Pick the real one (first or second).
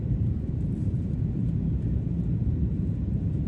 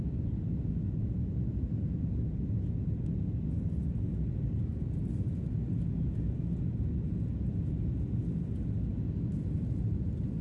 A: second